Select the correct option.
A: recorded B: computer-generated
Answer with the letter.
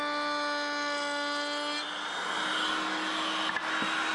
A